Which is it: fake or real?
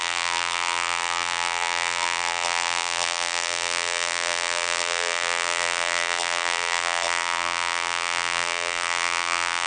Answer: fake